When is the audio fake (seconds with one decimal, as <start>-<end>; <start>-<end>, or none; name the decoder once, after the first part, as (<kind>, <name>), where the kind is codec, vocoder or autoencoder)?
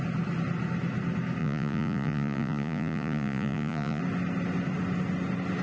1.4-4.0 (vocoder, Vocos)